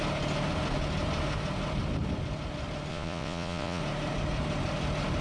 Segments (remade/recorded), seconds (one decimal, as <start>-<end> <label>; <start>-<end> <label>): 0.0-2.9 recorded; 2.9-3.8 remade; 3.8-5.2 recorded